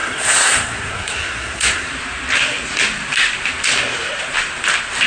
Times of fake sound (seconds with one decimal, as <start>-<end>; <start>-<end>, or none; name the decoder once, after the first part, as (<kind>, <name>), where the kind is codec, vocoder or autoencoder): 0.0-1.9 (codec, SNAC)